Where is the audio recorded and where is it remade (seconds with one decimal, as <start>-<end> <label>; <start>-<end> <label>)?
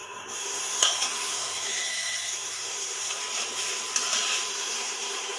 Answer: 0.0-3.2 remade; 3.2-4.5 recorded; 4.5-5.4 remade